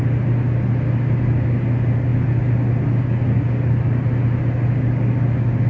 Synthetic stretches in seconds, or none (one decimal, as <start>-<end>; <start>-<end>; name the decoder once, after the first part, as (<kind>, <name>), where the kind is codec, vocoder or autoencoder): none